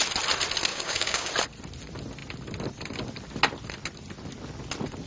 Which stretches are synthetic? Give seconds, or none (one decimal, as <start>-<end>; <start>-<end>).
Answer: 0.7-1.3